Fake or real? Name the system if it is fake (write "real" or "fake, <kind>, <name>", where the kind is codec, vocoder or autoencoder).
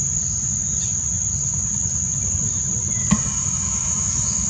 real